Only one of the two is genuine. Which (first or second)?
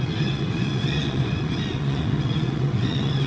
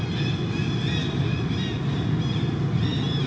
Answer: second